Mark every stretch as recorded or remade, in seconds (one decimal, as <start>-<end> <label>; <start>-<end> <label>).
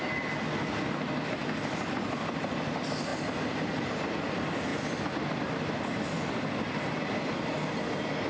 0.0-8.3 recorded